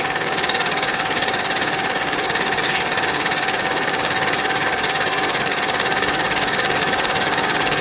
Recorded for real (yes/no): no